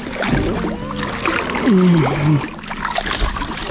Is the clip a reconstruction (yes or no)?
no